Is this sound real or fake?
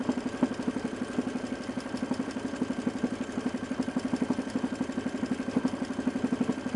real